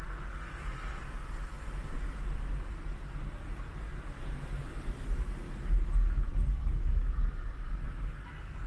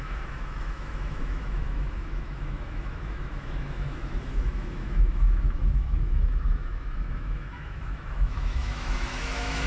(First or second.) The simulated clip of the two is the second